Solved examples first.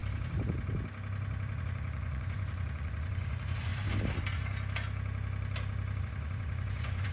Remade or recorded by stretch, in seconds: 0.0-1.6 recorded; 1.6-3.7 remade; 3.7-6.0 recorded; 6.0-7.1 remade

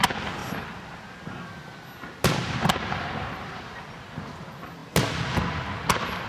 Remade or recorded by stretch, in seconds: 0.0-6.3 recorded

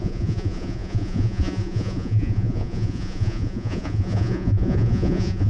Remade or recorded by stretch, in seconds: 0.0-5.5 remade